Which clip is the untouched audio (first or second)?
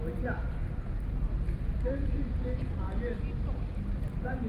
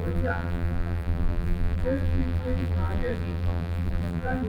first